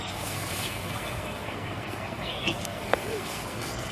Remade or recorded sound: remade